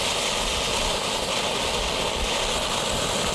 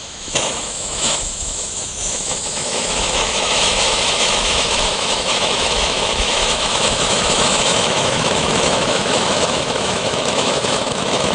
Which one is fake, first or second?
second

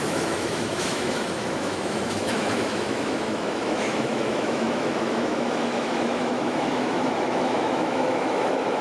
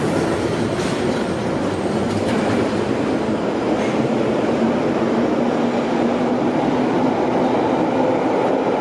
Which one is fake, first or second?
first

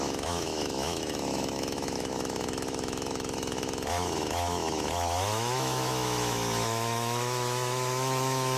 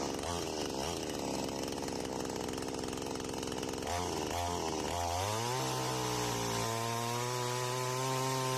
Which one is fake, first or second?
first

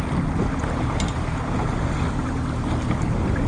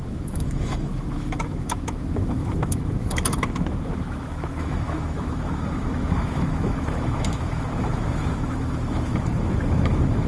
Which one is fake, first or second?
second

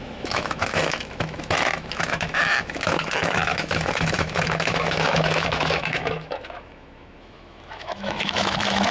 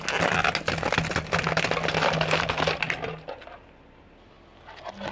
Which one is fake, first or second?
first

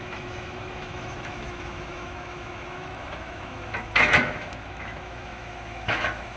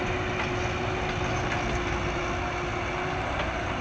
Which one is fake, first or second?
first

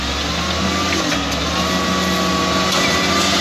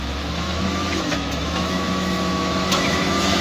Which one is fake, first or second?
second